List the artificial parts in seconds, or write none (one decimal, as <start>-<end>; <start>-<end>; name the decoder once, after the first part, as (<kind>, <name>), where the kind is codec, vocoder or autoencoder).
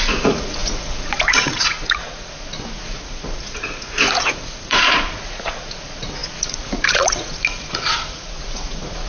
0.0-9.1 (vocoder, Vocos)